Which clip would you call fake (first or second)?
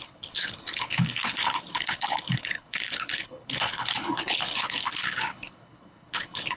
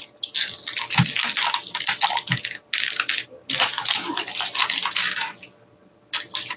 first